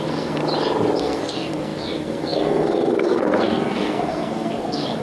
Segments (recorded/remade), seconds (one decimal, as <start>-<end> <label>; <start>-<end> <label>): 0.0-0.4 remade; 0.4-1.0 recorded; 1.0-5.0 remade